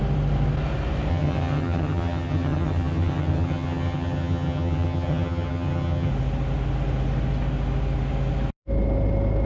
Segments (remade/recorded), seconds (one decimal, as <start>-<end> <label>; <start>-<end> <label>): 0.0-1.1 recorded; 1.1-6.1 remade; 6.1-9.5 recorded